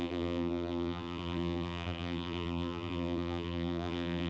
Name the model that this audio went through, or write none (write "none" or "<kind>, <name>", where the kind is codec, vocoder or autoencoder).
vocoder, BigVGAN v2